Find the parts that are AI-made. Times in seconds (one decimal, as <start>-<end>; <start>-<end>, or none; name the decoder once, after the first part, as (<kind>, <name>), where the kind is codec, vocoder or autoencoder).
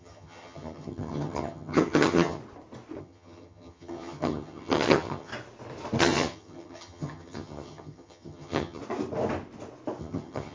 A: 0.0-2.4 (vocoder, HiFi-GAN); 3.0-5.3; 6.0-8.8; 10.0-10.5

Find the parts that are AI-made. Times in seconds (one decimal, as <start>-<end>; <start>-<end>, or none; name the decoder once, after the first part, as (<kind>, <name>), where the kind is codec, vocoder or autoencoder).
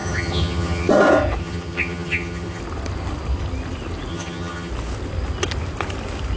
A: 0.0-0.9 (vocoder, HiFi-GAN); 1.4-2.6; 4.1-4.7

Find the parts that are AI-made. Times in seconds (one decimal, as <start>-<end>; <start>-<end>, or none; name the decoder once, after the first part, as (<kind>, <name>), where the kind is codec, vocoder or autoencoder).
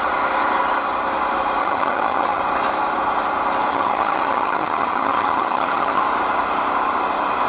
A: 1.6-2.4 (vocoder, HiFi-GAN); 3.7-6.0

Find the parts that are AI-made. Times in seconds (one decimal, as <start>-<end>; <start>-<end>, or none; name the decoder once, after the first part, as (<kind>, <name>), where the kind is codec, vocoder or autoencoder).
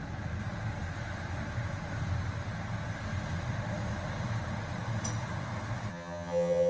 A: 5.9-6.7 (vocoder, HiFi-GAN)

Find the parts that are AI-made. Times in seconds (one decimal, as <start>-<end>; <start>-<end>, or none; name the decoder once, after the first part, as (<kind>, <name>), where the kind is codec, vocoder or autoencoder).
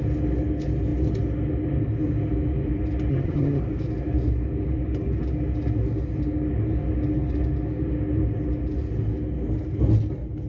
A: 3.1-3.6 (vocoder, HiFi-GAN)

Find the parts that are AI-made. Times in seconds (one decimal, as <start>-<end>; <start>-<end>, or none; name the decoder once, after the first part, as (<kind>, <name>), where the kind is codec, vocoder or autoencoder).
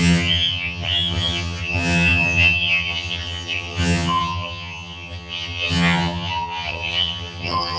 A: 0.0-7.8 (vocoder, HiFi-GAN)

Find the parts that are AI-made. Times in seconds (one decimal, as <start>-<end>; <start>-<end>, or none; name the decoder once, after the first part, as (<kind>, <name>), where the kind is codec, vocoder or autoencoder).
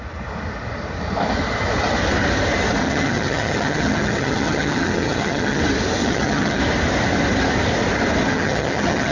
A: 2.8-5.6 (vocoder, HiFi-GAN); 6.0-6.6; 8.3-9.1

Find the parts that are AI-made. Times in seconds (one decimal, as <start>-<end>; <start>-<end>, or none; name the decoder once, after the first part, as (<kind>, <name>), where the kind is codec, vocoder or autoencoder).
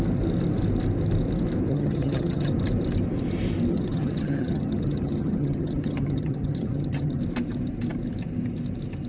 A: 1.7-2.5 (vocoder, HiFi-GAN); 3.7-7.2